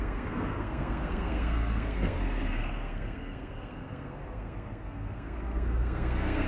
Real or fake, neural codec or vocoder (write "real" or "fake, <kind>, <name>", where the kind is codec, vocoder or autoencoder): fake, codec, SNAC